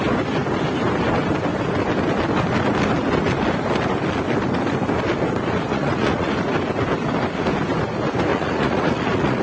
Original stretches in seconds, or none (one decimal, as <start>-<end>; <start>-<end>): 0.0-5.7; 6.3-8.3